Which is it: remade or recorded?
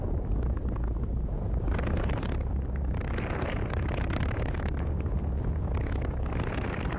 recorded